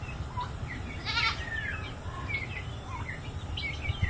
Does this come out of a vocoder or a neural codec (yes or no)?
no